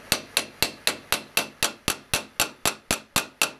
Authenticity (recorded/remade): recorded